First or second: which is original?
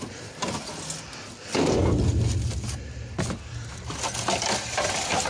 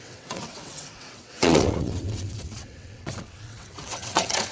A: first